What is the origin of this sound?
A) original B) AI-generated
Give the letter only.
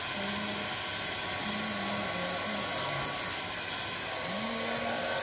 A